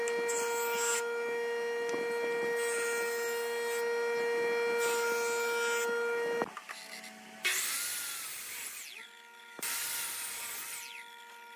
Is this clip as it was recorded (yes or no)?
yes